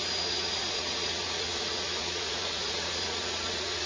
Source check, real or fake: fake